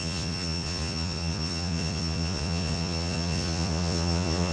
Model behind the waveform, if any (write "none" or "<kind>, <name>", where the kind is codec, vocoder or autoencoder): vocoder, Vocos